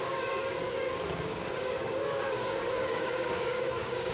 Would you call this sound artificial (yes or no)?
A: yes